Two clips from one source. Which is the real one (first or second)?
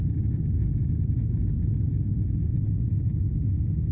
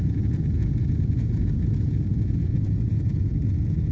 first